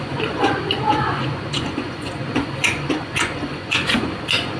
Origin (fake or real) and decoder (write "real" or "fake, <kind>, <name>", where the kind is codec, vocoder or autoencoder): fake, vocoder, Vocos